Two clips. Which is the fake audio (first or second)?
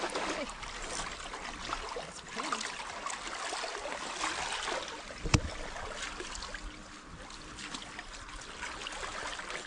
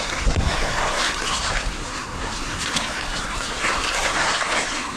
second